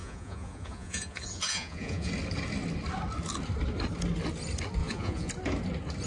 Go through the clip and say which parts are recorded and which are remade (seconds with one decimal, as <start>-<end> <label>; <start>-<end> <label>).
0.0-2.1 remade; 2.1-4.8 recorded; 4.8-5.3 remade; 5.3-6.1 recorded